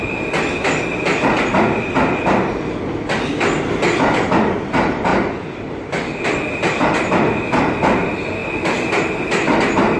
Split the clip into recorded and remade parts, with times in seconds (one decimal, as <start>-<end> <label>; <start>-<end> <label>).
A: 0.0-5.1 recorded; 5.1-6.6 remade; 6.6-8.4 recorded; 8.4-8.9 remade; 8.9-10.0 recorded